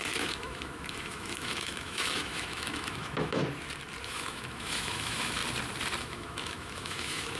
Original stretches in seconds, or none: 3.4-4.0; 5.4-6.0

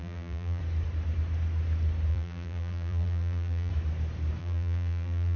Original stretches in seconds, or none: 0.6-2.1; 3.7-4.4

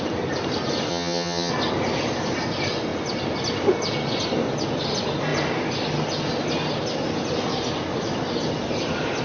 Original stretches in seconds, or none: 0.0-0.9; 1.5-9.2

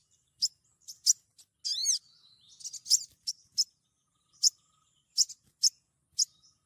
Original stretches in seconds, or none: 0.0-4.0; 5.3-6.7